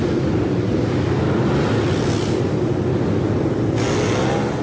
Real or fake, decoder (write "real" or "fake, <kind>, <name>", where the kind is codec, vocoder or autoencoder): real